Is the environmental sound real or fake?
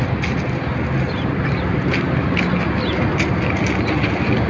real